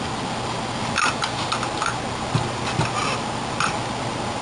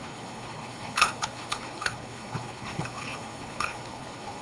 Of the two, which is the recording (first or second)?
first